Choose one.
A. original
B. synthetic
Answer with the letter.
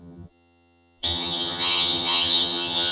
B